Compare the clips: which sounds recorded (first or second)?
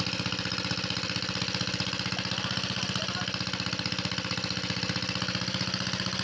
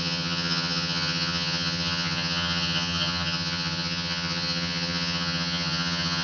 first